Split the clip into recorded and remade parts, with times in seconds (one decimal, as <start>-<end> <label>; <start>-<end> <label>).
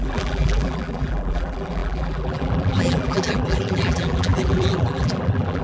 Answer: 0.0-5.6 remade